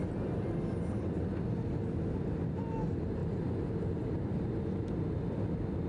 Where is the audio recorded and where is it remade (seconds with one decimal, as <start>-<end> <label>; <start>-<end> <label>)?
0.0-3.2 recorded; 3.2-3.7 remade; 3.7-5.9 recorded